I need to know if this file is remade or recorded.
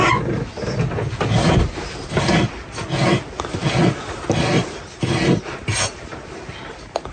recorded